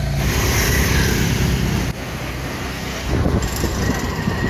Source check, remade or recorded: recorded